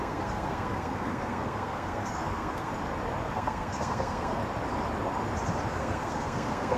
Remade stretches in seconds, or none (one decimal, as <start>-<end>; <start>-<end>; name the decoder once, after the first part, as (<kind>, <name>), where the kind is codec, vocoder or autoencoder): 0.0-2.7 (codec, SNAC); 3.3-4.4; 5.7-6.8